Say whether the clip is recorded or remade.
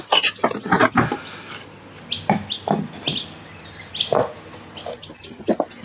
recorded